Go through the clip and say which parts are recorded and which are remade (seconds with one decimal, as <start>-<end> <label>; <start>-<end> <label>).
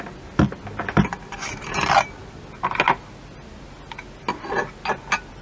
0.0-5.4 recorded